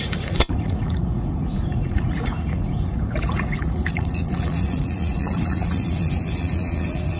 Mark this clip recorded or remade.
remade